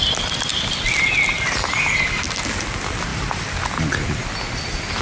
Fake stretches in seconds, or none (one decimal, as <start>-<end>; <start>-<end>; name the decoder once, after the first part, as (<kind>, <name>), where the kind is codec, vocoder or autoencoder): none